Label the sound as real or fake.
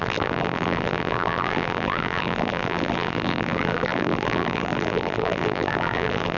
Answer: fake